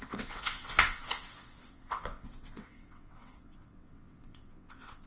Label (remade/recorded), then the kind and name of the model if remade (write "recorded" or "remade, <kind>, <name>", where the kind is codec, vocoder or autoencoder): remade, vocoder, WaveNeXt